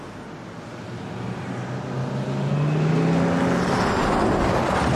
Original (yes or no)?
yes